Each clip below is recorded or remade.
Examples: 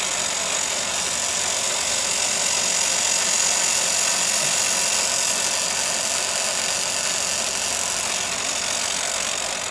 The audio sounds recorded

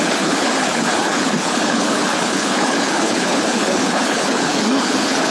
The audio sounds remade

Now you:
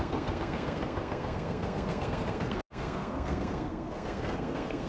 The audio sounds remade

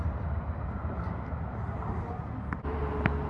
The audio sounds recorded